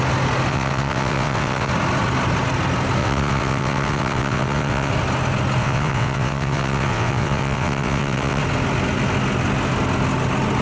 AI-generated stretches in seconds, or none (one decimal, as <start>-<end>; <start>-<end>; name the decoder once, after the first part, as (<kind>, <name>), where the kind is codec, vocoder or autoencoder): 0.5-1.7 (vocoder, WaveNeXt); 3.0-4.9; 5.6-8.4